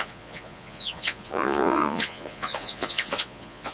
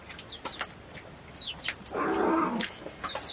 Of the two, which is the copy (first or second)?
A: first